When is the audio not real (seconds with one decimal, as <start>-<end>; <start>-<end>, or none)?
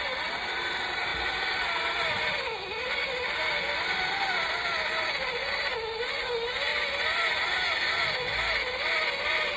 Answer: none